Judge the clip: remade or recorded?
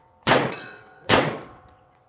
remade